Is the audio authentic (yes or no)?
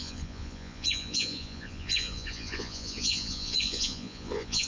no